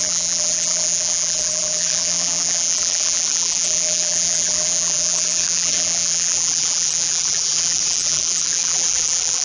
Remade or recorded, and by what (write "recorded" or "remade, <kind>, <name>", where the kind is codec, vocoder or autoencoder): remade, vocoder, BigVGAN v2